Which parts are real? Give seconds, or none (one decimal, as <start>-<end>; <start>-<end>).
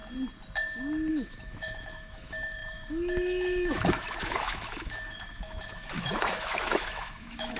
0.0-1.1